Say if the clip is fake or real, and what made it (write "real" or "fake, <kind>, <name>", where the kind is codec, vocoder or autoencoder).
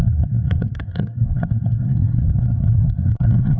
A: fake, codec, SNAC